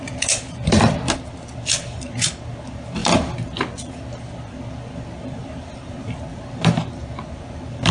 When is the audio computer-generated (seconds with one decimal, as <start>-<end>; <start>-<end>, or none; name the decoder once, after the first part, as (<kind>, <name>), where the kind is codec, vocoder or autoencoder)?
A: 0.0-7.9 (vocoder, BigVGAN v2)